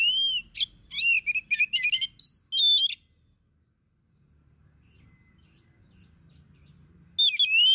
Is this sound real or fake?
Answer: real